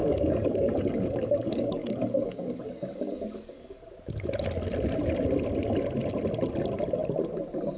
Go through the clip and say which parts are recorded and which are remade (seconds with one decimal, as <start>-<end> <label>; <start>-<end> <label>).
0.0-3.9 remade; 3.9-7.8 recorded